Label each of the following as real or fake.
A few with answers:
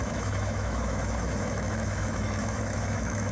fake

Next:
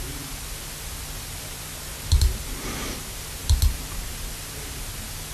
real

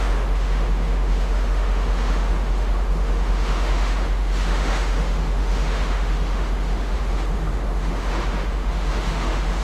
fake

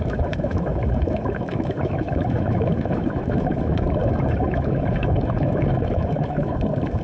fake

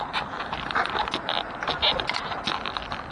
real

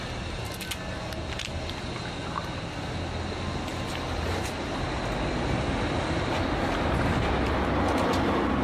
real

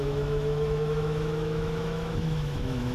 fake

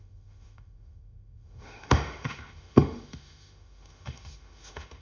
fake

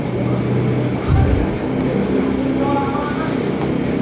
real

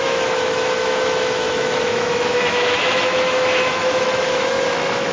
fake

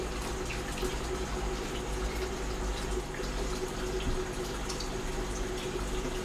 real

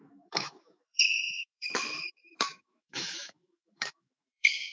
fake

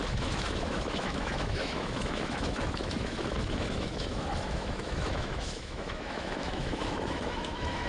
fake